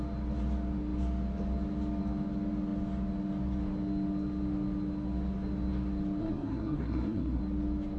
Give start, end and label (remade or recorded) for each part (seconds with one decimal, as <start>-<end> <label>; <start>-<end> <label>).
0.0-6.2 recorded; 6.2-7.4 remade; 7.4-8.0 recorded